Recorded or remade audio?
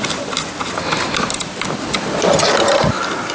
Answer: recorded